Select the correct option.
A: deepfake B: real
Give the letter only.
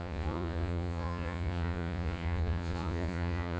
A